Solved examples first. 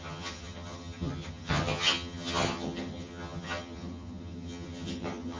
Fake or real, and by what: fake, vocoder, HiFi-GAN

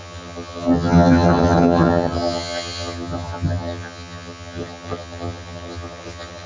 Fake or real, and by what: fake, vocoder, HiFi-GAN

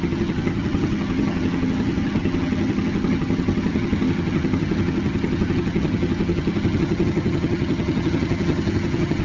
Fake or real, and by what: fake, vocoder, HiFi-GAN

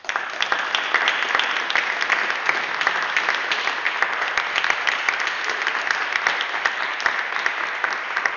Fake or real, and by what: real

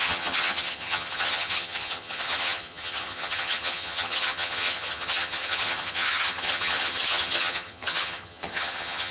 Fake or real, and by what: fake, vocoder, HiFi-GAN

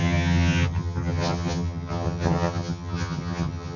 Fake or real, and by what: fake, vocoder, HiFi-GAN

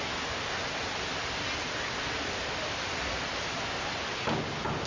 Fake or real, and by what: real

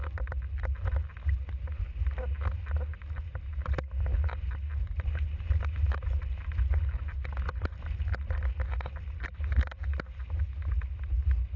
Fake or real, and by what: real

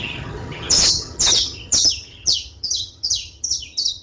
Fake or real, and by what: fake, vocoder, HiFi-GAN